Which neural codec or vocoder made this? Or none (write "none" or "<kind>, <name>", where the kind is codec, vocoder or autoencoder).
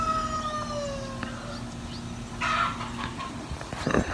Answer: none